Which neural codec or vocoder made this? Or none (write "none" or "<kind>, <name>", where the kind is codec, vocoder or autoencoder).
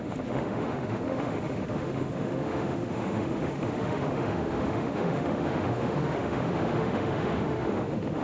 autoencoder, DAC-VAE